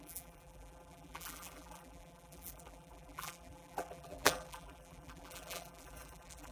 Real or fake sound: fake